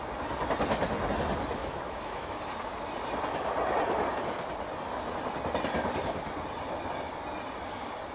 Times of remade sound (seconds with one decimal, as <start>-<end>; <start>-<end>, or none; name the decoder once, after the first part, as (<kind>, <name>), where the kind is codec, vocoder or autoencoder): 1.6-2.4 (autoencoder, DAC-VAE)